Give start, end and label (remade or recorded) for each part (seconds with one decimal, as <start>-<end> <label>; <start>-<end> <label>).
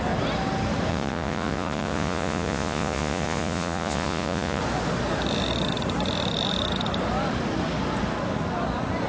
0.0-0.9 recorded; 0.9-4.6 remade; 4.6-9.1 recorded